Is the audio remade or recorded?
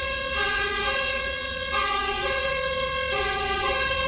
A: remade